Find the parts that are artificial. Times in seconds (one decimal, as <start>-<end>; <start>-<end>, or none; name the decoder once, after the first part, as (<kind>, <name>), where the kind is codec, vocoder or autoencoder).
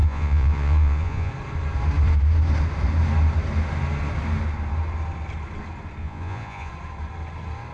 0.0-1.3 (vocoder, Vocos); 6.0-6.7